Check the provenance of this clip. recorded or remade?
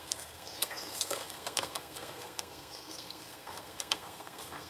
remade